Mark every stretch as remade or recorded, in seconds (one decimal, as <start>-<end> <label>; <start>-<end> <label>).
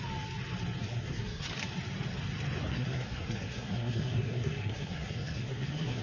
0.0-0.9 recorded; 0.9-1.5 remade; 1.5-2.7 recorded; 2.7-6.0 remade